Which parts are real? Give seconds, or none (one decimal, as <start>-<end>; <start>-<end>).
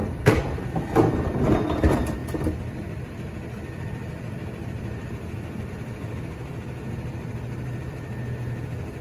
0.0-2.2; 5.7-9.0